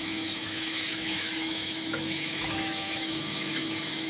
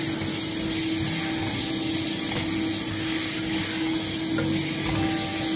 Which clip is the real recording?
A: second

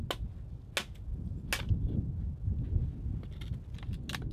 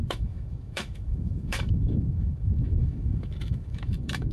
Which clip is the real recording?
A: first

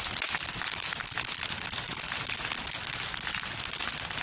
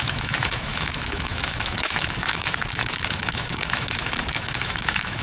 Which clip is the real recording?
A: first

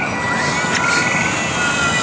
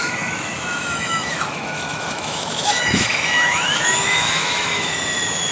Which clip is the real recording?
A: first